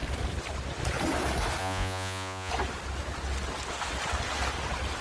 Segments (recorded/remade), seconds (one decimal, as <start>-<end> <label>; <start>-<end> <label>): 0.0-1.6 recorded; 1.6-2.5 remade; 2.5-5.0 recorded